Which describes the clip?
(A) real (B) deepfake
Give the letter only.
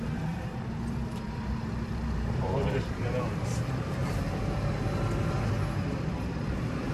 B